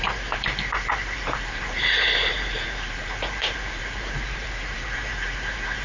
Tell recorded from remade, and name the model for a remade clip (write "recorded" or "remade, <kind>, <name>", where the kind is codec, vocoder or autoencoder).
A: remade, vocoder, BigVGAN v2